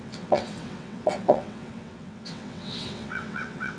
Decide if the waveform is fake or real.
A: fake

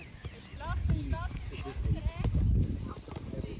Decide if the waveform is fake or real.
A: real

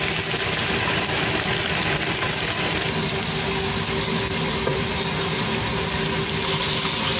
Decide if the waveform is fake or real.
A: real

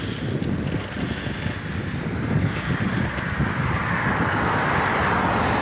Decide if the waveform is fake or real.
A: real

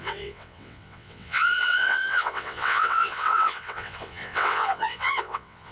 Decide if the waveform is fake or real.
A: fake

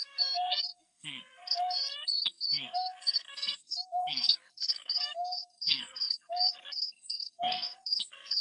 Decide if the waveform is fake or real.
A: fake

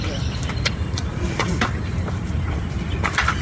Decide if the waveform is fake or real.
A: fake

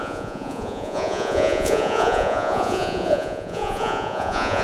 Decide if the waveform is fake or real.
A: fake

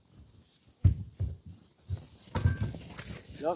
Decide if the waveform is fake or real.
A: real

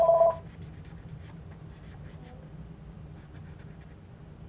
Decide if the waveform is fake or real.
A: real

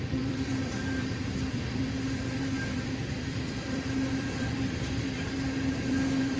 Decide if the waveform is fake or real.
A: fake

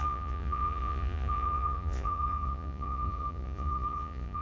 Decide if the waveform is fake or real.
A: fake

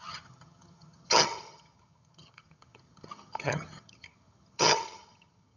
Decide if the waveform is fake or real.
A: fake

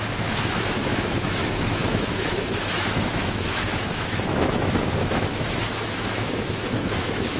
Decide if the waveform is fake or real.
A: fake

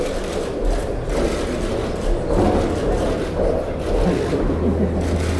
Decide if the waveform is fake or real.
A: real